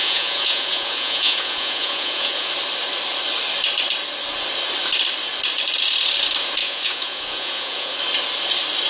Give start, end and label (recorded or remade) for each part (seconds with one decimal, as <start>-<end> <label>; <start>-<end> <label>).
0.0-2.5 remade; 2.5-6.6 recorded; 6.6-8.0 remade; 8.0-8.9 recorded